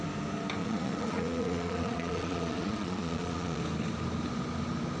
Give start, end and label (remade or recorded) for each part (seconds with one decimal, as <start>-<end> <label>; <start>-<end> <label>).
0.0-0.6 recorded; 0.6-3.6 remade; 3.6-5.0 recorded